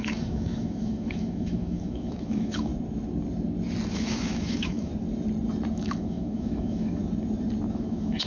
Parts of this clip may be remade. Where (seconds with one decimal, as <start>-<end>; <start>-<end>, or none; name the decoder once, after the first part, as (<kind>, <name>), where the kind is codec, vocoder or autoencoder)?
0.0-2.7 (autoencoder, DAC-VAE); 3.9-4.9; 5.7-7.0; 7.7-8.3